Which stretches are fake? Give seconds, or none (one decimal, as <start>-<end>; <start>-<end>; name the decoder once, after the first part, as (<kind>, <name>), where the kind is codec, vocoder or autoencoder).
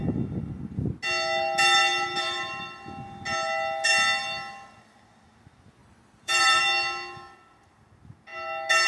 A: 5.8-6.6 (vocoder, BigVGAN v2)